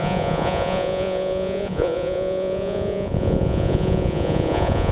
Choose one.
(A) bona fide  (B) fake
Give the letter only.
B